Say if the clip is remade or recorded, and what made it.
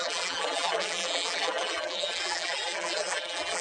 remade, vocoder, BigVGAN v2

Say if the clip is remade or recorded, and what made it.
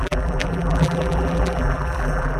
remade, vocoder, BigVGAN v2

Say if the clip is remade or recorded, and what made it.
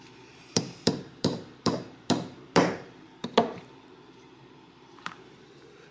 remade, vocoder, BigVGAN v2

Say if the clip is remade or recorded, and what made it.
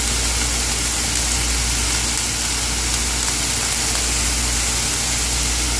recorded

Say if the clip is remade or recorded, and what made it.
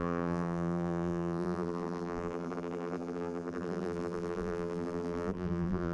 remade, vocoder, BigVGAN v2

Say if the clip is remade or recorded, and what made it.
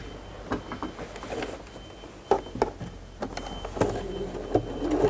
recorded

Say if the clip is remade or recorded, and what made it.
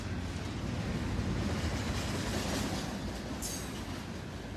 recorded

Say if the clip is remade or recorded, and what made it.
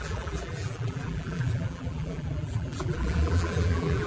remade, vocoder, BigVGAN v2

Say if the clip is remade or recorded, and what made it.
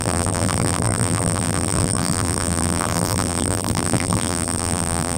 remade, vocoder, BigVGAN v2